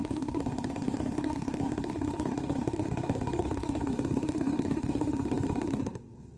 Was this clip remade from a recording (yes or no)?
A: yes